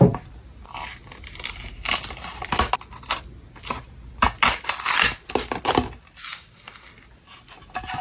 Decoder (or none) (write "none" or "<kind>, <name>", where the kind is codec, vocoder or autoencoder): none